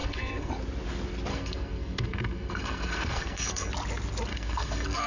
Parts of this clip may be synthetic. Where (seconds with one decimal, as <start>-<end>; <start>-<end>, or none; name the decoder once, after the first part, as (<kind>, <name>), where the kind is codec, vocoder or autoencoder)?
0.0-0.5 (codec, SNAC); 1.3-3.7; 4.3-5.1